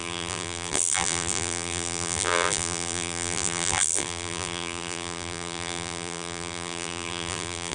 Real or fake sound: fake